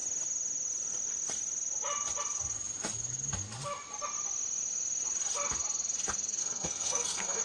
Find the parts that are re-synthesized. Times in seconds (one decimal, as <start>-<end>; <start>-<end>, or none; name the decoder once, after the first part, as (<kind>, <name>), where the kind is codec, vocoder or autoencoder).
6.4-7.4 (codec, SNAC)